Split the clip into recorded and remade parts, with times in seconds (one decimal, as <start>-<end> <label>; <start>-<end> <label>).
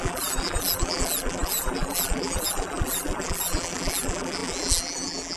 0.0-5.4 remade